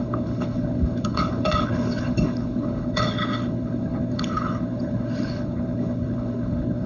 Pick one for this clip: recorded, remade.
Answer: remade